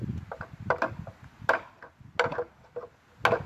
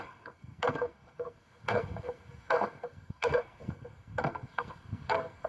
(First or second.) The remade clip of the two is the second